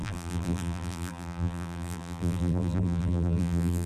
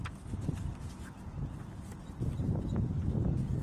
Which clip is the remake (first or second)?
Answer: first